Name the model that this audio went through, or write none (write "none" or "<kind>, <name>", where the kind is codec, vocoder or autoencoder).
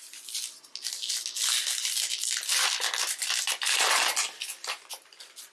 none